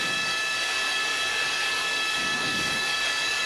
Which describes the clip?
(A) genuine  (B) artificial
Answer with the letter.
B